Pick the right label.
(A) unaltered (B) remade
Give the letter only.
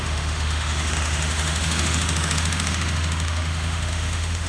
B